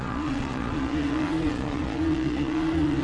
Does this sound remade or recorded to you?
remade